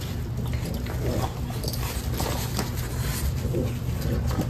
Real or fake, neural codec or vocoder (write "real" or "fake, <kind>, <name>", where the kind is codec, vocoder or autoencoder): real